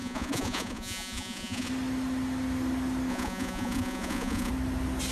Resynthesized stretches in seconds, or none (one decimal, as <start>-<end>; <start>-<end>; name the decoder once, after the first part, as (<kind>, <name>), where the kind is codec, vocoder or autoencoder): 0.0-1.7 (vocoder, Vocos); 3.1-4.5